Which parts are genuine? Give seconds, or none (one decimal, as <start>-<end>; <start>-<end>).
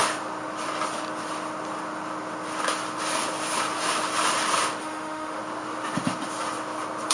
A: 0.0-4.8; 5.4-7.1